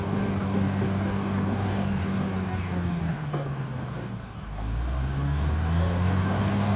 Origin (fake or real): fake